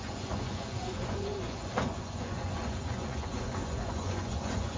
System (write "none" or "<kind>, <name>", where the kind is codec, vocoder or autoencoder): vocoder, Vocos